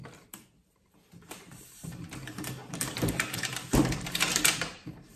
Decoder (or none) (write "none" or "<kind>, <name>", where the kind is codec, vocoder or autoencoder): vocoder, BigVGAN v2